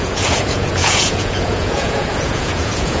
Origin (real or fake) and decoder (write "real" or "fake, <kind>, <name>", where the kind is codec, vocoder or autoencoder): fake, vocoder, Vocos